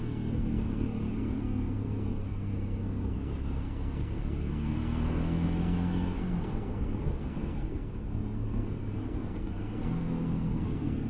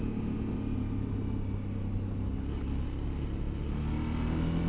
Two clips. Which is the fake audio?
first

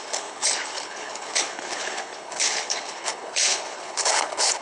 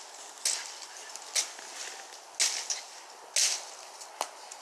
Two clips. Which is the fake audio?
first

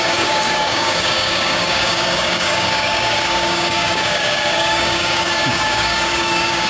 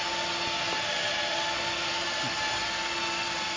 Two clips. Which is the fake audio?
first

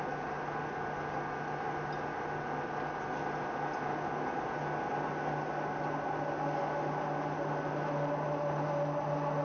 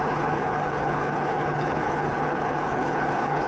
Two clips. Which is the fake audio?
second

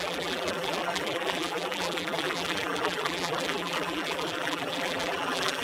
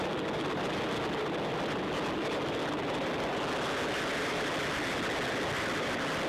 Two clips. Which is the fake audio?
first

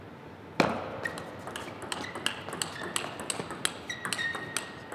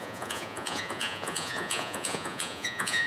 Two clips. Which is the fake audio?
second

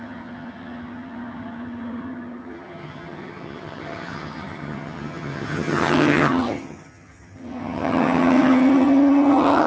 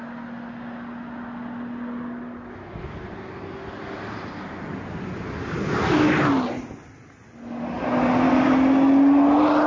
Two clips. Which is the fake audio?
first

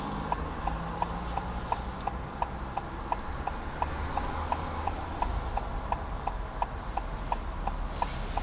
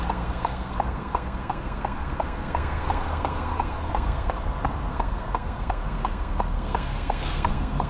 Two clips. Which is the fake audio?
second